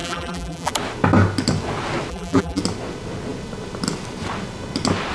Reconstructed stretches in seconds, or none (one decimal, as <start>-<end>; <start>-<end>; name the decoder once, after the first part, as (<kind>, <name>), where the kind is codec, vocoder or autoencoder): 0.0-0.7 (vocoder, BigVGAN v2); 2.1-2.6

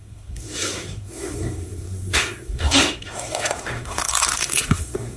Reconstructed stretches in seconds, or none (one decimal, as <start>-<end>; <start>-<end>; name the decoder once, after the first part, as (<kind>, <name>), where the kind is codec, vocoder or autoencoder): 0.0-5.2 (codec, SNAC)

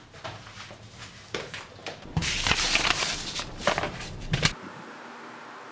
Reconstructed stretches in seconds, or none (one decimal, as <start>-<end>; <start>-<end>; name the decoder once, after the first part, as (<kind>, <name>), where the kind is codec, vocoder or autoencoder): 1.8-5.2 (vocoder, BigVGAN v2)

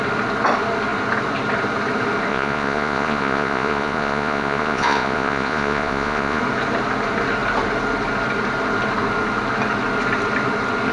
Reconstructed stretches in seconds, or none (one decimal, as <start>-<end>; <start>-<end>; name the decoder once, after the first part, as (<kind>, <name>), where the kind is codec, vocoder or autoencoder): 2.3-6.4 (vocoder, Vocos)

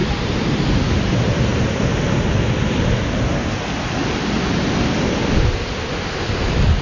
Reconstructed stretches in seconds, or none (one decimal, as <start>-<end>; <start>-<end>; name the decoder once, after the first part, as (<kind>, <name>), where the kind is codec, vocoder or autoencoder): 0.0-0.6 (vocoder, BigVGAN v2)

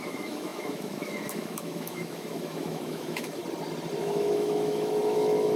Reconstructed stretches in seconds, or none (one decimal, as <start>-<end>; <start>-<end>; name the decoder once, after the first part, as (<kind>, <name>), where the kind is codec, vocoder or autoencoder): 0.0-3.4 (autoencoder, DAC-VAE); 4.0-5.6

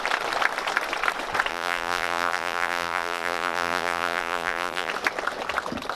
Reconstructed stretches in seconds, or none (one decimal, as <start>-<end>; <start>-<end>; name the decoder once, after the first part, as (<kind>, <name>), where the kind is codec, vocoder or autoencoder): 1.5-4.9 (vocoder, BigVGAN v2)